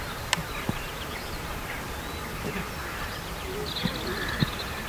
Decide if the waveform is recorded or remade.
recorded